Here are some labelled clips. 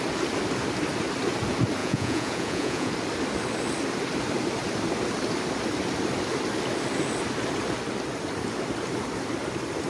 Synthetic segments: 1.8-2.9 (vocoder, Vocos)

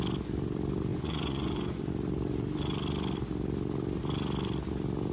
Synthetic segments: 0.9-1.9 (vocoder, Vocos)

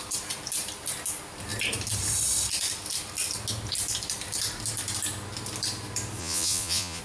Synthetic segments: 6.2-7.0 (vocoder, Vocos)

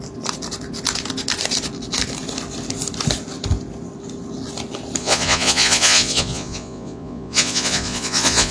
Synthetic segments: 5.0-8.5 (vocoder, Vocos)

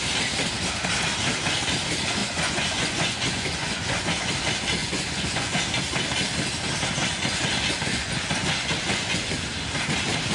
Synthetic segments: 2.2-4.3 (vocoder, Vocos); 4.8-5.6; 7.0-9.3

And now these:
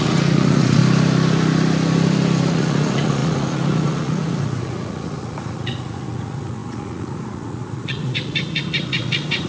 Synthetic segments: 0.0-0.8 (vocoder, Vocos); 2.5-9.5

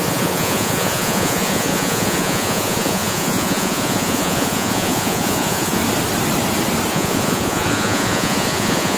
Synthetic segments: 0.0-5.8 (vocoder, Vocos); 6.9-9.0

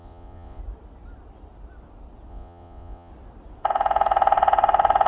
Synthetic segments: 0.0-0.6 (vocoder, Vocos); 2.3-3.1